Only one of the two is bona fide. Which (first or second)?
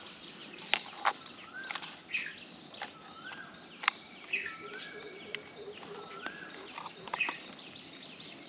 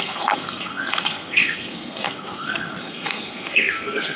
first